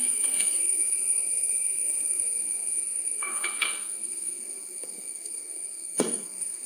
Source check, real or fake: fake